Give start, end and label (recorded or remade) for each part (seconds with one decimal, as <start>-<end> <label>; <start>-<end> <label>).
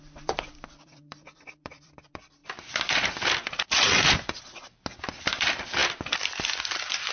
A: 0.0-2.4 remade; 2.4-5.2 recorded; 5.2-7.1 remade